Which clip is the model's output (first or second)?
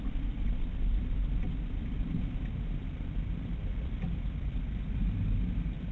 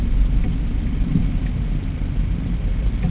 first